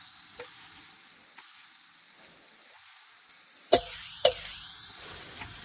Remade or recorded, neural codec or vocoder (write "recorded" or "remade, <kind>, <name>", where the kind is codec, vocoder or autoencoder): recorded